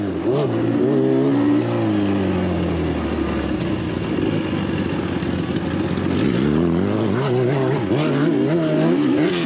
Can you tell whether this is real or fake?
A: real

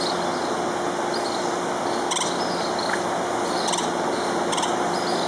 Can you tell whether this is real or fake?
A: real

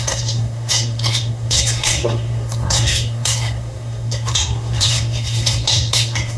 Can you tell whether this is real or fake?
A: fake